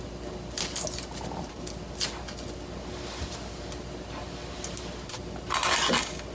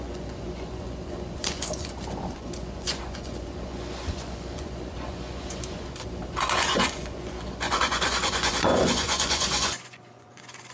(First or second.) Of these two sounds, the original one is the first